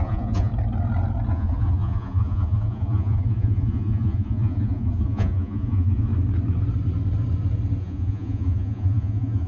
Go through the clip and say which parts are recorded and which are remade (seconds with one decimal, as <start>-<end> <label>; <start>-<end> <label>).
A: 0.0-0.5 remade; 0.5-1.3 recorded; 1.3-6.1 remade; 6.1-7.8 recorded; 7.8-9.5 remade